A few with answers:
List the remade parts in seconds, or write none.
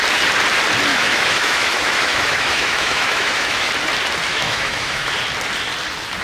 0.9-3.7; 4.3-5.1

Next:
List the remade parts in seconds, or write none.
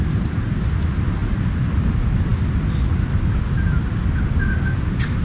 none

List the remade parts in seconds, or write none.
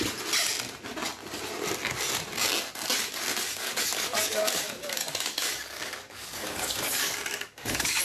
3.3-8.0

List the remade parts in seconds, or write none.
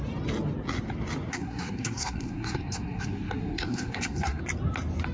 1.3-4.4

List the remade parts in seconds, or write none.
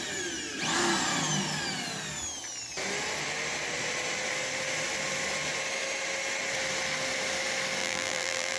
7.8-8.6